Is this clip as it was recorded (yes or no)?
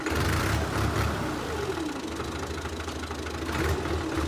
yes